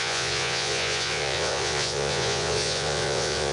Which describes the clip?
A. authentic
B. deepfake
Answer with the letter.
B